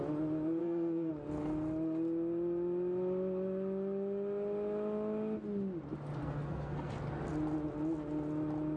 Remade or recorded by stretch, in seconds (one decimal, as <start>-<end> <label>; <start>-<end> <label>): 0.0-0.6 recorded; 0.6-1.1 remade; 1.1-6.2 recorded; 6.2-6.9 remade; 6.9-8.8 recorded